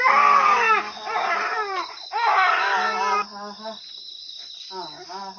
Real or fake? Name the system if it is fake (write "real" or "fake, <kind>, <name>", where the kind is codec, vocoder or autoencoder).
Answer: real